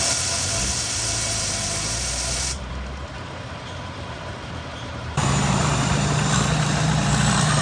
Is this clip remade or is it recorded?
remade